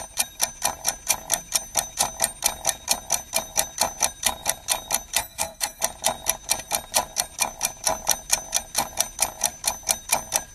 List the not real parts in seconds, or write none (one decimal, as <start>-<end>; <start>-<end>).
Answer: 5.2-5.8